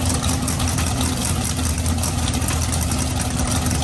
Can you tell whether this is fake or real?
real